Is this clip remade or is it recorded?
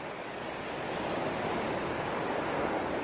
recorded